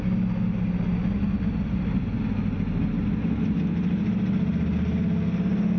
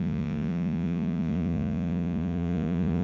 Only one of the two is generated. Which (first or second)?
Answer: second